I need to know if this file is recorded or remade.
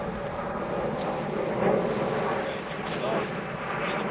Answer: recorded